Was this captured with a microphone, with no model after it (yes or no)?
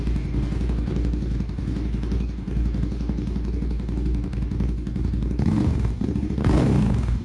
no